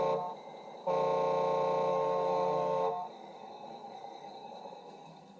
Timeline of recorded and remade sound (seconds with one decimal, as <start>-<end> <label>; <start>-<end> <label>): 0.0-1.9 recorded; 1.9-5.4 remade